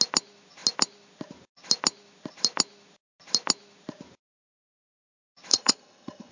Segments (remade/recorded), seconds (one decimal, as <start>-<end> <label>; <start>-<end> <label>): 0.0-5.5 recorded; 5.5-6.3 remade